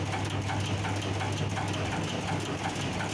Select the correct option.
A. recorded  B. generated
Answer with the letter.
A